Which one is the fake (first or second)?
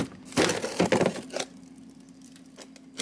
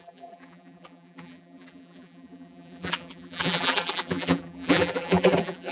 second